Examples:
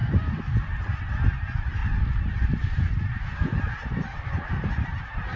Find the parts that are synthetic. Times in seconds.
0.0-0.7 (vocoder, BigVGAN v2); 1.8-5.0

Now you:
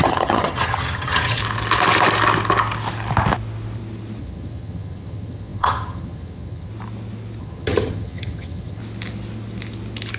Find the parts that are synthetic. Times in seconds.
0.0-1.4 (vocoder, HiFi-GAN); 4.2-6.7; 7.4-8.8

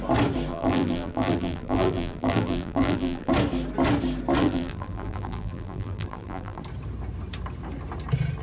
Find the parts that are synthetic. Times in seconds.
0.5-3.3 (vocoder, BigVGAN v2); 4.4-6.6

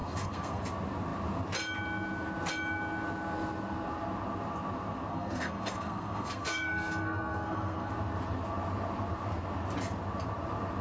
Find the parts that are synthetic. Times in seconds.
0.0-0.6 (codec, SNAC); 5.1-7.9

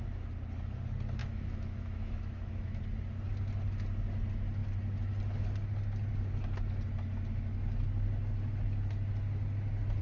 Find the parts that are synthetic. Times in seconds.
1.2-2.8 (autoencoder, DAC-VAE)

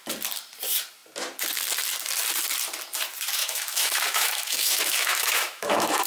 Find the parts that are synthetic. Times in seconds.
3.4-6.1 (autoencoder, DAC-VAE)

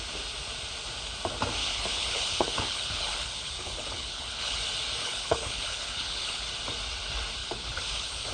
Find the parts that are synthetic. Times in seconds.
1.6-4.6 (codec, HILCodec); 5.0-6.5; 7.4-8.3

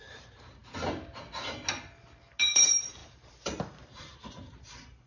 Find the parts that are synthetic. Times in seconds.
0.0-0.6 (vocoder, BigVGAN v2); 2.4-5.1